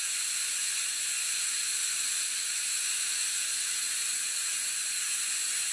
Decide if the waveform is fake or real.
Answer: fake